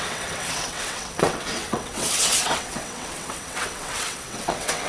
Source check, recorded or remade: remade